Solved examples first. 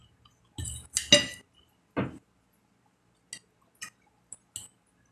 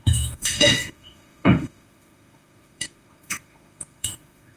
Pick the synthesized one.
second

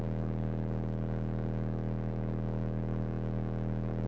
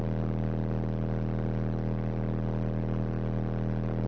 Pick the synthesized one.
first